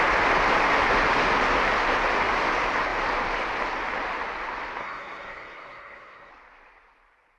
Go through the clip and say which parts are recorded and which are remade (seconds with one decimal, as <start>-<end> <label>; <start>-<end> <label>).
0.0-4.8 recorded; 4.8-6.3 remade; 6.3-7.4 recorded